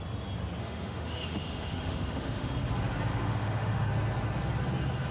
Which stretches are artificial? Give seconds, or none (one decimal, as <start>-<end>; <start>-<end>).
0.6-2.5; 3.1-3.9